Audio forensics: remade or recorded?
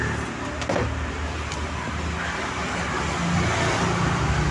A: recorded